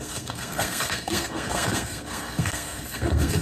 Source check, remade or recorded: remade